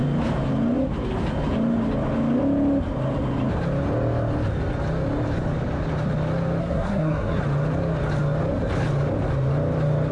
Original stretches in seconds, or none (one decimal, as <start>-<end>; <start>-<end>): 0.0-6.6; 7.4-10.1